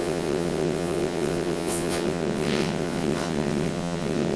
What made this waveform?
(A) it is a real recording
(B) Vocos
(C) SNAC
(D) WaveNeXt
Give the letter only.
D